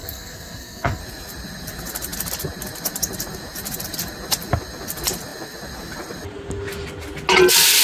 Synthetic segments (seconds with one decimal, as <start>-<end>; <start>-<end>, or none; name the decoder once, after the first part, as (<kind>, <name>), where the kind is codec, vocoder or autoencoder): 0.0-1.0 (codec, SNAC)